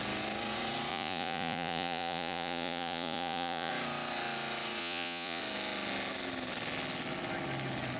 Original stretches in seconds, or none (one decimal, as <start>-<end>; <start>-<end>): 0.0-0.9; 3.7-4.8; 5.4-8.0